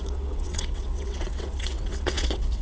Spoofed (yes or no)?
yes